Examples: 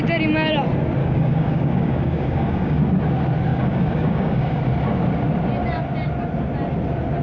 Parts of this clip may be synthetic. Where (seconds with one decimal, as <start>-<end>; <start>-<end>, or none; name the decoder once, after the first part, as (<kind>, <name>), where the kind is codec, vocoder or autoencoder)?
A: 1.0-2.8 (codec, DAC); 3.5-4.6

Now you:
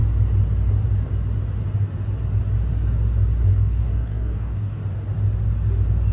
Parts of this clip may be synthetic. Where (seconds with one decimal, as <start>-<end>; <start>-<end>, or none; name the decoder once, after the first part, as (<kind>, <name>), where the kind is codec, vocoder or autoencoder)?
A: 3.5-4.8 (codec, DAC)

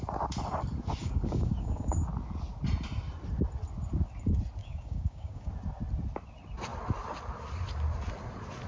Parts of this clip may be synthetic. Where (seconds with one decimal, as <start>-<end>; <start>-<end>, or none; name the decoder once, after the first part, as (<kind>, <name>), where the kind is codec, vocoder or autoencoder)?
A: 1.0-2.1 (codec, DAC); 4.6-5.5

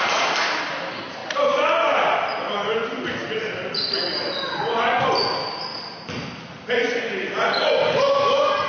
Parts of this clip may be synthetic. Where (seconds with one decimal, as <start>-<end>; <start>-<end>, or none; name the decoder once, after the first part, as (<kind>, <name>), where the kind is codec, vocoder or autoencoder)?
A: none

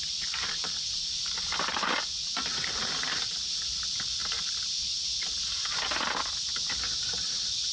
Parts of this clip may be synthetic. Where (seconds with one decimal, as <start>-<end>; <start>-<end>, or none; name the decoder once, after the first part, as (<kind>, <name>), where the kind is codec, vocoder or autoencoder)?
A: none